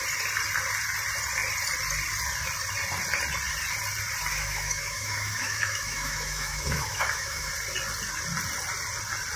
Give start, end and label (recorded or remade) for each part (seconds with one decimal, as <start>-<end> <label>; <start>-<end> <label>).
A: 0.0-4.3 recorded; 4.3-7.5 remade; 7.5-9.4 recorded